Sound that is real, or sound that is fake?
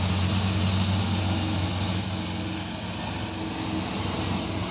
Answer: real